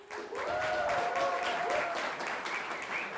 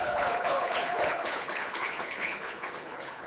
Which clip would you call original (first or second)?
first